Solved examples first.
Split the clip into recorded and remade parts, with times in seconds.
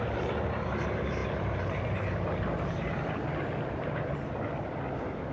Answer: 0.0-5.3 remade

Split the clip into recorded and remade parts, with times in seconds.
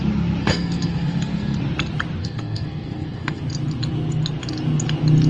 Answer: 0.0-0.4 recorded; 0.4-1.6 remade; 1.6-2.2 recorded; 2.2-3.4 remade; 3.4-5.3 recorded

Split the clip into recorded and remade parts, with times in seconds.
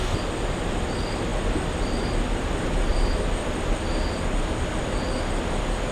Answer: 0.0-5.9 recorded